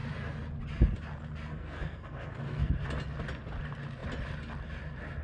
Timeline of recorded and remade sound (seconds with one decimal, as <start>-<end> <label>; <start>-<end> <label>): 0.0-1.5 recorded; 1.5-2.7 remade; 2.7-5.2 recorded